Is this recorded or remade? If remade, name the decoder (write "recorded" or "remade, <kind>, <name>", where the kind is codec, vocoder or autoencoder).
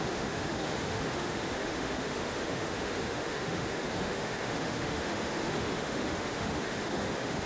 remade, autoencoder, DAC-VAE